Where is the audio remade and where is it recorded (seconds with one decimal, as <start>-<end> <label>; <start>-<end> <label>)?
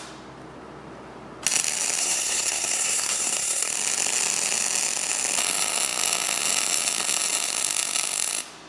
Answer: 0.0-2.0 recorded; 2.0-3.7 remade; 3.7-8.7 recorded